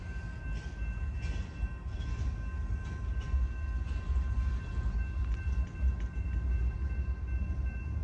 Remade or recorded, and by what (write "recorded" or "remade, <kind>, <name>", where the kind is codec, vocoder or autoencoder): recorded